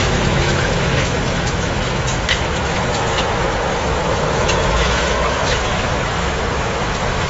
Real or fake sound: fake